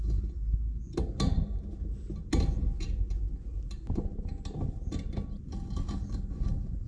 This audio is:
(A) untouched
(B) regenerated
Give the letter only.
A